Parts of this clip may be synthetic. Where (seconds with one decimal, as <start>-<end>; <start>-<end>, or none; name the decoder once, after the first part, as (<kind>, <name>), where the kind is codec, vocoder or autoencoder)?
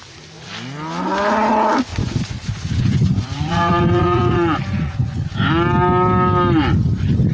1.9-5.5 (vocoder, Vocos)